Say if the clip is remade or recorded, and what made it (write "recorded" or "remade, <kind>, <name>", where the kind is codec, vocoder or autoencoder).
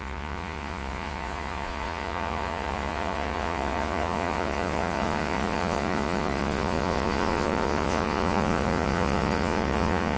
remade, vocoder, Vocos